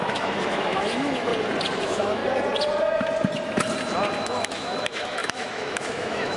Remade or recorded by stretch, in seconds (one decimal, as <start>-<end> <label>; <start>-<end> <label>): 0.0-1.3 remade; 1.3-1.8 recorded; 1.8-2.2 remade; 2.2-4.2 recorded; 4.2-6.4 remade